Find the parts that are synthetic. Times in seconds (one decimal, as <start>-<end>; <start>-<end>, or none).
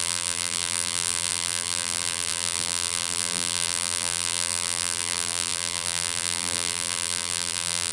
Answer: 0.0-7.9